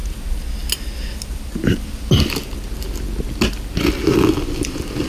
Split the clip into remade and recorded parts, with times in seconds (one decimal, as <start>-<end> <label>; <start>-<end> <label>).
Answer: 0.0-5.1 recorded